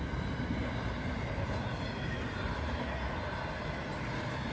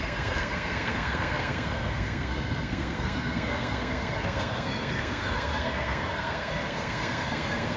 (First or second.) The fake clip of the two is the second